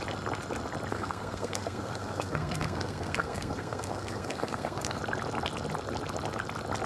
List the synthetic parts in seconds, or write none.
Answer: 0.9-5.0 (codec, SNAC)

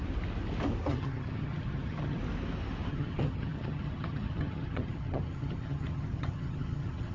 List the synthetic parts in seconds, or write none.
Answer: 0.9-2.2 (vocoder, HiFi-GAN); 2.9-7.1

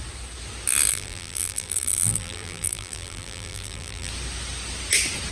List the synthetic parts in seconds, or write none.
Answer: 0.9-4.1 (vocoder, BigVGAN v2)

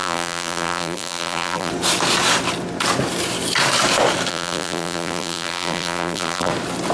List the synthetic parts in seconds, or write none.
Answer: 0.0-1.7 (vocoder, BigVGAN v2); 4.3-6.5

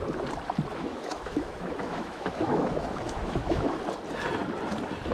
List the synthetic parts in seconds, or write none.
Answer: 0.7-3.8 (autoencoder, DAC-VAE)